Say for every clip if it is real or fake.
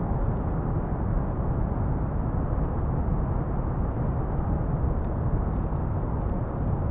real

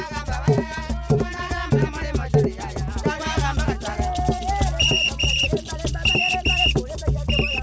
fake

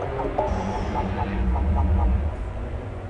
fake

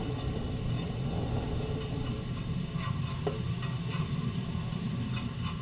fake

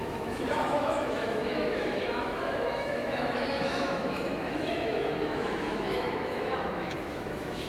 fake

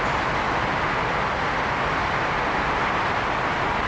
real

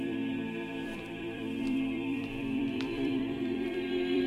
fake